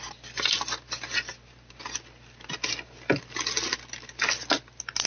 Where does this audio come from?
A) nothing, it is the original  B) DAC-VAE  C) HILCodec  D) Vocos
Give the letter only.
A